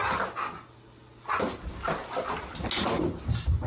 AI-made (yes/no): no